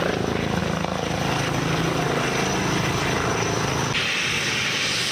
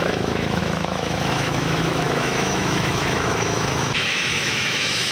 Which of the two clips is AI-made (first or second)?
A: second